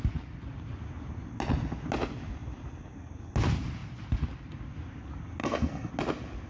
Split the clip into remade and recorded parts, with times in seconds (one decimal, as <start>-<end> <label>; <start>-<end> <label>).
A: 0.0-5.4 recorded; 5.4-5.9 remade; 5.9-6.5 recorded

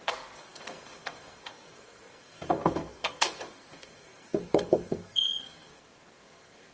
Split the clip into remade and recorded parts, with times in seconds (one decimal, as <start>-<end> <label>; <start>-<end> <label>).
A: 0.0-6.7 remade

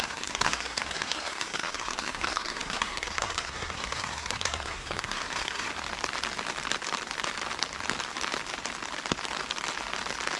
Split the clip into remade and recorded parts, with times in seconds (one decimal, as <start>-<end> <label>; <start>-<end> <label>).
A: 0.0-5.7 remade; 5.7-10.4 recorded

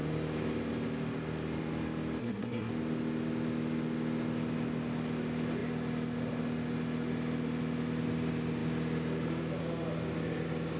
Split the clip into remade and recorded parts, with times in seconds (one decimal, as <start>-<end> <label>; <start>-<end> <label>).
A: 0.0-2.2 recorded; 2.2-2.7 remade; 2.7-10.8 recorded

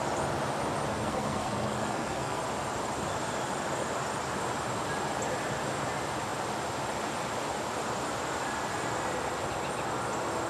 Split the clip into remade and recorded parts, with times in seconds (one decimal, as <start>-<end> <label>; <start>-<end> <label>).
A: 0.0-0.9 recorded; 0.9-2.4 remade; 2.4-10.5 recorded

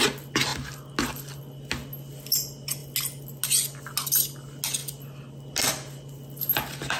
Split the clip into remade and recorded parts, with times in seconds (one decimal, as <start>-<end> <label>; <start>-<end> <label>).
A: 0.0-7.0 recorded

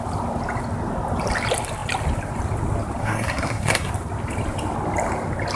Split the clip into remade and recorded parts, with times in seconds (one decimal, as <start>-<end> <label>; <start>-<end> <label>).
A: 0.0-3.0 recorded; 3.0-3.9 remade; 3.9-5.6 recorded